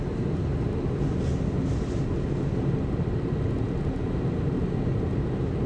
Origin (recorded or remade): recorded